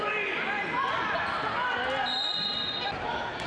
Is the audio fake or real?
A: real